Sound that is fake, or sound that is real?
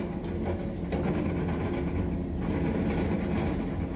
real